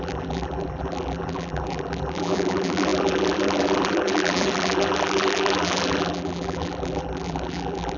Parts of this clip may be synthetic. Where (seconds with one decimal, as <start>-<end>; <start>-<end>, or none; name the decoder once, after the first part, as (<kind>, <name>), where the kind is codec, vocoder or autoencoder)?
0.0-8.0 (vocoder, BigVGAN v2)